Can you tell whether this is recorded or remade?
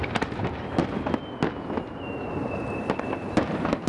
recorded